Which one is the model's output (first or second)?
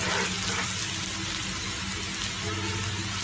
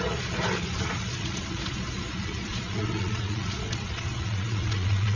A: second